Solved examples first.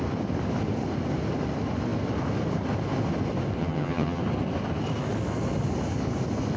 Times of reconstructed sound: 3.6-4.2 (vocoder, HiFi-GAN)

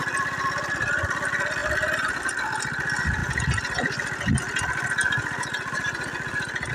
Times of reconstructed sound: 0.0-0.9 (vocoder, BigVGAN v2); 1.6-2.2

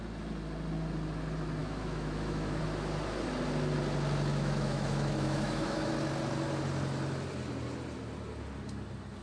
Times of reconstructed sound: 1.6-2.6 (autoencoder, DAC-VAE); 4.3-5.9

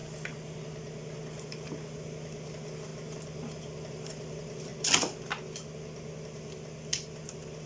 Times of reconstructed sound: 1.4-2.9 (vocoder, BigVGAN v2); 3.9-4.7; 7.3-7.7

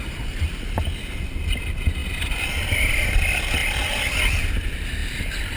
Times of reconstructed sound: 2.0-2.9 (vocoder, BigVGAN v2); 5.0-5.6

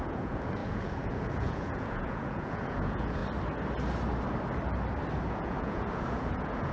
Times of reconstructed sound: 0.0-3.2 (vocoder, Vocos); 5.3-6.7

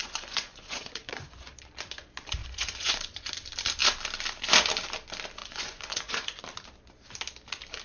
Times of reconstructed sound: 0.0-1.5 (vocoder, Vocos); 2.4-3.3; 5.4-6.4

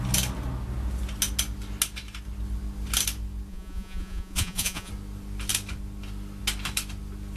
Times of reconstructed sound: 3.5-4.9 (vocoder, Vocos)